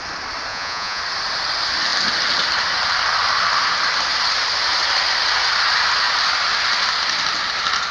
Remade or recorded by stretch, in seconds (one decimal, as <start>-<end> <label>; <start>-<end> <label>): 0.0-0.5 recorded; 0.5-1.0 remade; 1.0-7.9 recorded